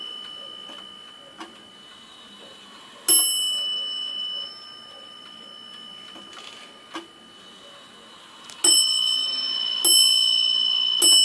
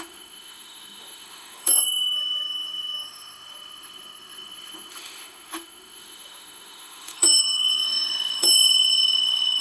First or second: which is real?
first